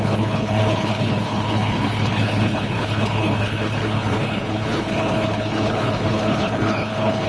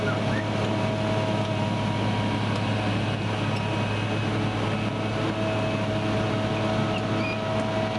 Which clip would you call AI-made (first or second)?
first